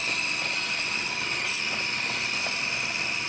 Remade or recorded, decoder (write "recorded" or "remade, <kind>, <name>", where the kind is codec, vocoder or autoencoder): recorded